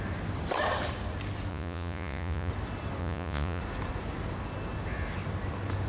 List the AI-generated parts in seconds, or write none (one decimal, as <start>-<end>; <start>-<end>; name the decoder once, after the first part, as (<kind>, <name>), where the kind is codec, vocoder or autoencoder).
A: 1.5-2.5 (vocoder, Vocos); 3.0-3.6